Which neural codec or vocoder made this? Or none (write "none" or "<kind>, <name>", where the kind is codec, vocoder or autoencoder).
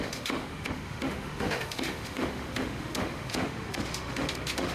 autoencoder, DAC-VAE